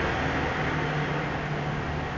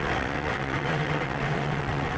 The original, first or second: first